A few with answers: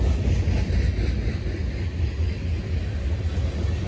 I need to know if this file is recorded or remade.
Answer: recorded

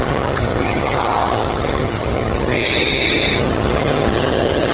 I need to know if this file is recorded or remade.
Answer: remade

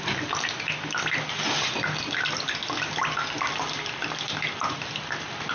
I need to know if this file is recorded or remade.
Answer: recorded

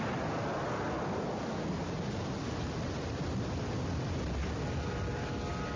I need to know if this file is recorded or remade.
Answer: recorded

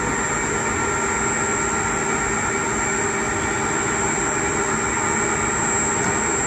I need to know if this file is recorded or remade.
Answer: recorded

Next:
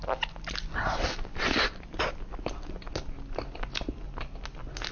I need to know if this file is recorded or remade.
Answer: recorded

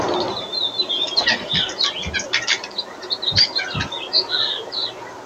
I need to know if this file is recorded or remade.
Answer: recorded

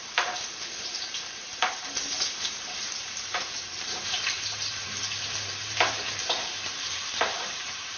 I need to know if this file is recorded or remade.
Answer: remade